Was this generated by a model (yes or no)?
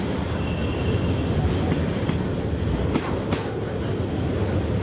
no